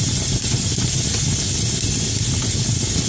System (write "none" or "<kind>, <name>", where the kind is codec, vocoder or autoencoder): none